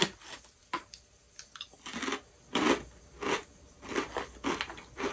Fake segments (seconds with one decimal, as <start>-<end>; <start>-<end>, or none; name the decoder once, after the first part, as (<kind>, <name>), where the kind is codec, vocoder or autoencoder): none